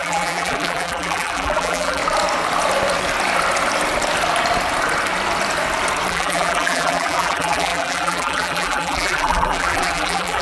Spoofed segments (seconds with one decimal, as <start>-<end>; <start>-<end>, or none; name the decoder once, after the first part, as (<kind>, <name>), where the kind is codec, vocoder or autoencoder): 0.0-2.0 (vocoder, BigVGAN v2); 6.1-10.4